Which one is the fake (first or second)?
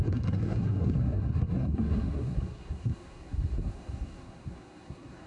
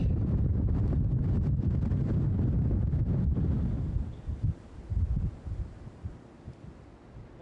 first